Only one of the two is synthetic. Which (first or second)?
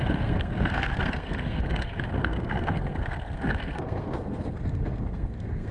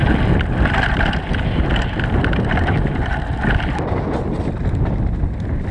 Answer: first